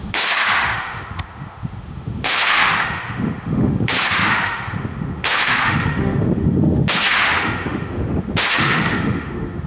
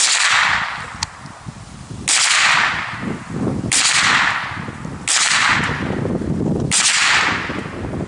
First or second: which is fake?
first